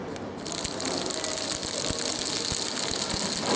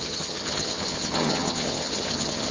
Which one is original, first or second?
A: first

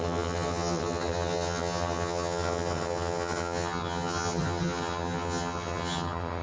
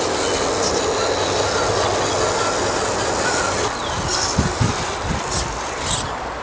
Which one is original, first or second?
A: second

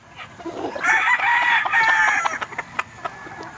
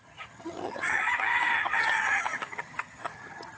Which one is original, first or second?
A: first